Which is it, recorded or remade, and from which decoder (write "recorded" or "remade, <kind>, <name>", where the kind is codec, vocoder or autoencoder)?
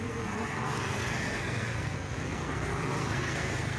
remade, codec, SNAC